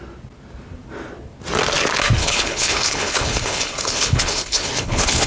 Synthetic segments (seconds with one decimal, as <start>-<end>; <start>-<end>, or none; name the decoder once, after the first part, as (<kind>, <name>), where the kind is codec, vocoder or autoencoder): 2.2-5.3 (codec, HILCodec)